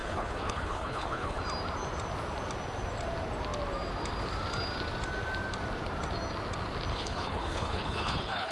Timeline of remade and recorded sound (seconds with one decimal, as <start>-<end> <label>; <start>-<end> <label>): 0.0-1.4 remade; 1.4-6.9 recorded; 6.9-8.5 remade